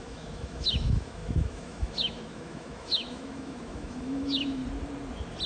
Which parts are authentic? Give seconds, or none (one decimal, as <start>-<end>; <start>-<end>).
4.6-5.5